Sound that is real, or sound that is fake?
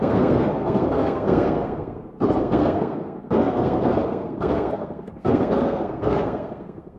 fake